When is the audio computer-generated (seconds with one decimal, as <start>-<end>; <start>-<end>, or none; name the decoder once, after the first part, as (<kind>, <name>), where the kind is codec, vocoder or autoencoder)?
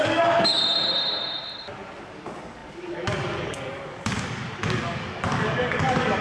0.0-0.6 (codec, DAC); 2.0-6.2